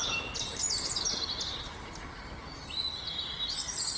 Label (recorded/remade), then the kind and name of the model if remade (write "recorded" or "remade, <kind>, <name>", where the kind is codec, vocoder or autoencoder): recorded